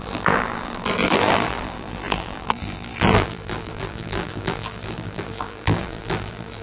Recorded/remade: remade